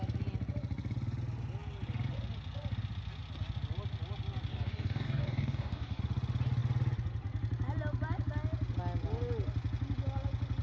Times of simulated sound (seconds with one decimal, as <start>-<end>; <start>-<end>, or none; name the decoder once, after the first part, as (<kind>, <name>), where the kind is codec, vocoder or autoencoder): 4.5-6.0 (codec, DAC)